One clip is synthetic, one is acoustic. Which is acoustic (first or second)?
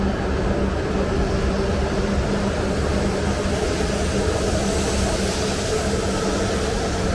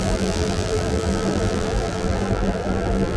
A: first